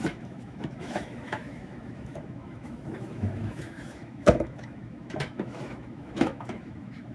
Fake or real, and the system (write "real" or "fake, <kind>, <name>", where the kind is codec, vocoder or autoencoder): fake, autoencoder, DAC-VAE